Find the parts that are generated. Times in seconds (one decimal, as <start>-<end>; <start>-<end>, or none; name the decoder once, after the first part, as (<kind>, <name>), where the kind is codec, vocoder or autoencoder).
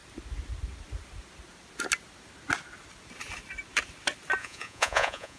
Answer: 4.4-5.4 (vocoder, Vocos)